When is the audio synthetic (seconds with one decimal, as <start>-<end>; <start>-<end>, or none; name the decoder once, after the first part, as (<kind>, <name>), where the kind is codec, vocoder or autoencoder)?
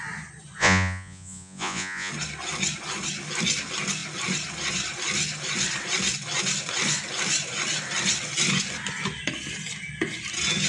0.6-2.1 (vocoder, Vocos)